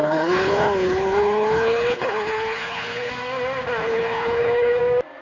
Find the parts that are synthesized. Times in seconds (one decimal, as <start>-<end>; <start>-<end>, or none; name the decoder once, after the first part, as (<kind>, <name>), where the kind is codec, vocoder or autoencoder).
0.0-3.1 (codec, HILCodec); 3.8-4.8